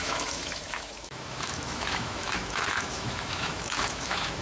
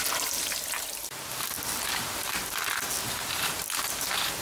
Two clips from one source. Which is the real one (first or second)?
second